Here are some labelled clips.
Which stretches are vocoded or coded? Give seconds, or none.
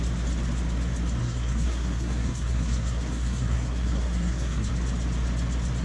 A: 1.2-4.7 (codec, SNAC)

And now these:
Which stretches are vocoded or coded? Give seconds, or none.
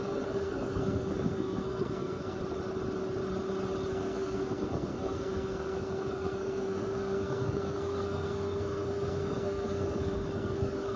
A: 0.0-2.4 (codec, SNAC); 3.9-11.0